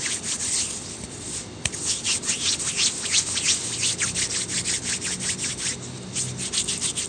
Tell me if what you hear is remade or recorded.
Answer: recorded